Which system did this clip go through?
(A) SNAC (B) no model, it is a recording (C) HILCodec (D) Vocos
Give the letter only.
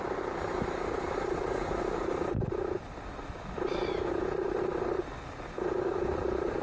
B